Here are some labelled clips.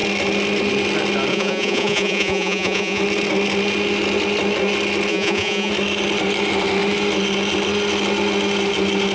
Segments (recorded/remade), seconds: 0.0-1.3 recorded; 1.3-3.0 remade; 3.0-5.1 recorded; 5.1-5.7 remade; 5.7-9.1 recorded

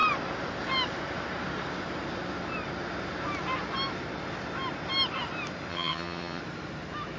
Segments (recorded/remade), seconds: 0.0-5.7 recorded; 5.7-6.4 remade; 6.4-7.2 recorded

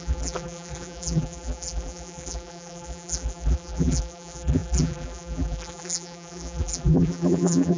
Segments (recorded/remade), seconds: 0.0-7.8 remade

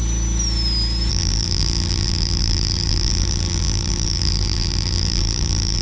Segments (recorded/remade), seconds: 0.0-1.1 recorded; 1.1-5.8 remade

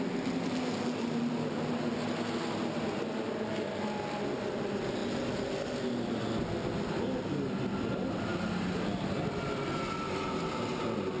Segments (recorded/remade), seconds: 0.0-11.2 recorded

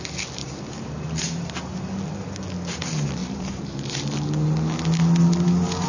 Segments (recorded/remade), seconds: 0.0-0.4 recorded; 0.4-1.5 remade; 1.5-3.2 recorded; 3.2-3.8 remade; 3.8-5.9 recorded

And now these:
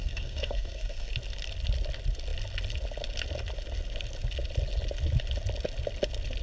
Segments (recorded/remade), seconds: 0.0-1.1 remade; 1.1-6.4 recorded

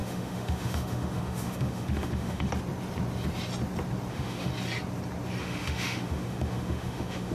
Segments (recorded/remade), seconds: 0.0-2.5 remade; 2.5-4.1 recorded; 4.1-4.5 remade; 4.5-5.4 recorded; 5.4-7.3 remade